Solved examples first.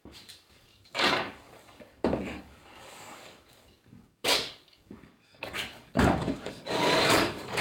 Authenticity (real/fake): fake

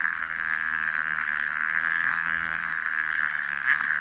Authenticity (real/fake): fake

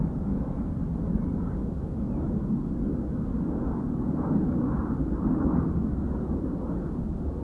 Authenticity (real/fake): real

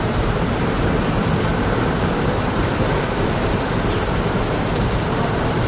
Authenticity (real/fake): fake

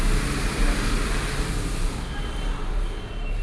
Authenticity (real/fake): real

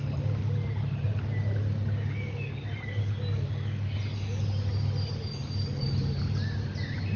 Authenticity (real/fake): real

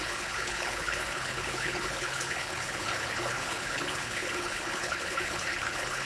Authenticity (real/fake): fake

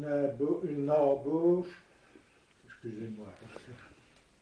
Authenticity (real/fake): real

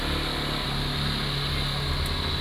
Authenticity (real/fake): real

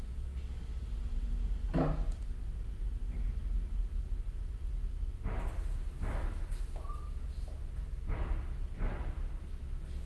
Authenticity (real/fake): real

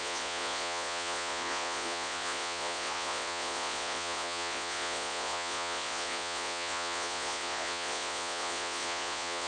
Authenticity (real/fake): fake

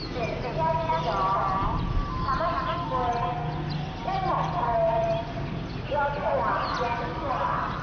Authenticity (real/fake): real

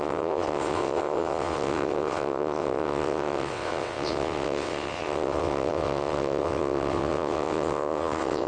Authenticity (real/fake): fake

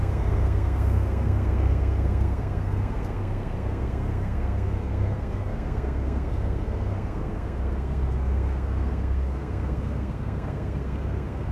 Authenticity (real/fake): fake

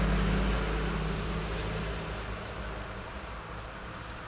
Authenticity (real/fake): real